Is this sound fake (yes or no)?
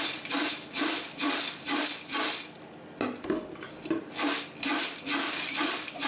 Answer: no